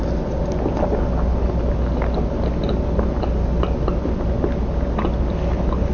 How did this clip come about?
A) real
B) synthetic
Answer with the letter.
A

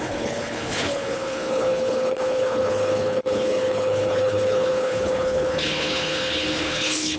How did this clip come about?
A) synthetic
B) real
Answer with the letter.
A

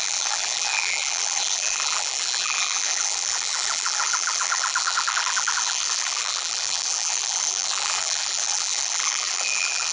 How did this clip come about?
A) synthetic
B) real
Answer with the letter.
A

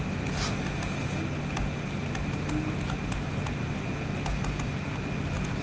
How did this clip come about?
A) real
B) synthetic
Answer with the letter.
A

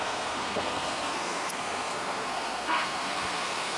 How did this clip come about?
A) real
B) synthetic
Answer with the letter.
B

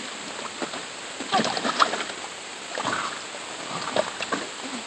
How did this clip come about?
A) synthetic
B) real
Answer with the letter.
B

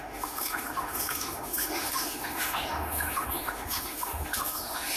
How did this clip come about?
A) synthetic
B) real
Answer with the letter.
A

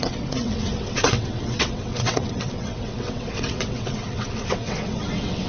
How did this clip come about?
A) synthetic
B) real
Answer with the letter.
A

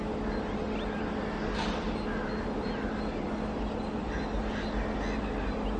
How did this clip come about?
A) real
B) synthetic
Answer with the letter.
A